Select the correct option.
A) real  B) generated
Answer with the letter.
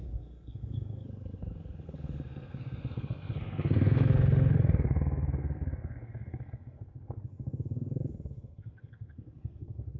B